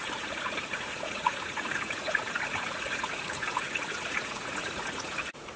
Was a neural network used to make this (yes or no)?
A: yes